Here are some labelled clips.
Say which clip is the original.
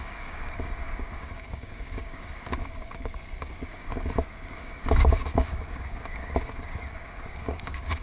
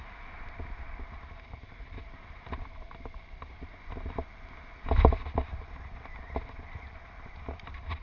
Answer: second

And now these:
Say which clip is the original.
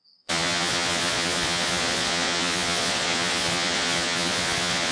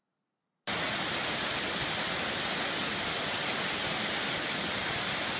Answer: second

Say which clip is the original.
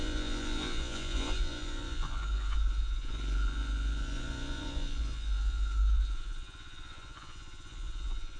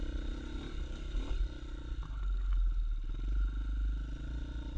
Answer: second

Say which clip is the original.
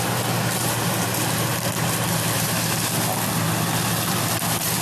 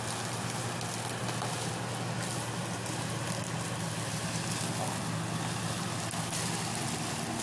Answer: second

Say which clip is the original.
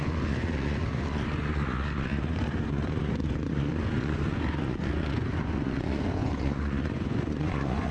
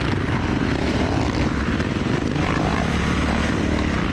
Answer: second